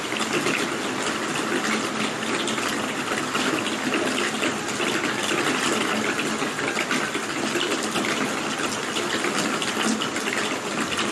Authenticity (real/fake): real